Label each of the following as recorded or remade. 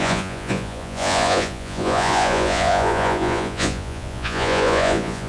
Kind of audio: remade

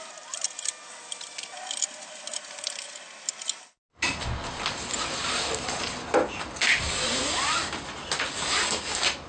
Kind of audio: recorded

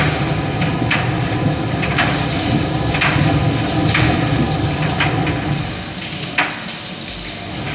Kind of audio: recorded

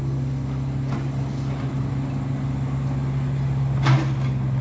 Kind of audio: recorded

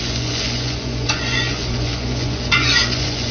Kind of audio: remade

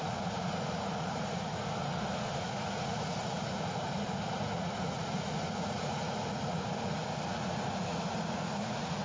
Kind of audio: remade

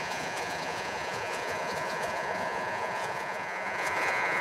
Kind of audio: remade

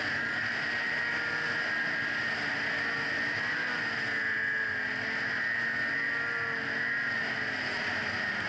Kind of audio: recorded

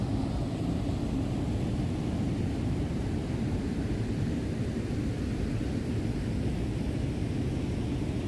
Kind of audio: recorded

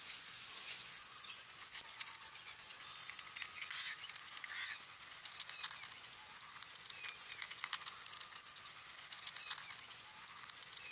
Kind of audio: remade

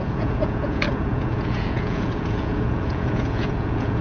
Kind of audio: remade